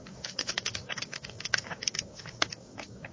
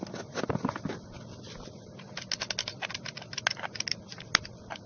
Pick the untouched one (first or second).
second